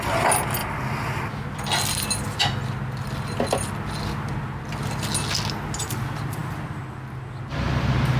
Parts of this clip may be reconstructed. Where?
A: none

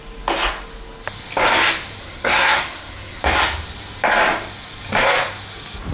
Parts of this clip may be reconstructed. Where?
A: 2.0-3.2 (codec, SNAC)

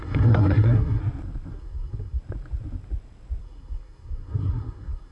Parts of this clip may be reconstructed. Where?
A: 0.0-1.0 (codec, SNAC); 1.5-2.2; 3.4-5.1

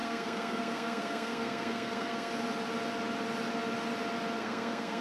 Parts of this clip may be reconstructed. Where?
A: 0.0-2.3 (codec, SNAC); 4.4-5.0